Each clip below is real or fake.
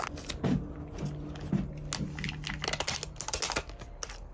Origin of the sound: real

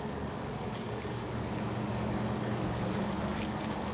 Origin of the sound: fake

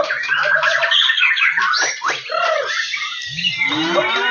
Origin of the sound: real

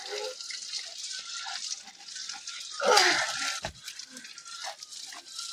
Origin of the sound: real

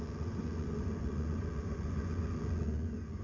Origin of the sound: fake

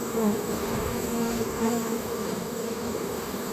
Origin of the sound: fake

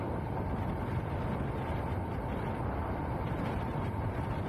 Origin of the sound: real